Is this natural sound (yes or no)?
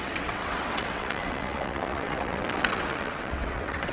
no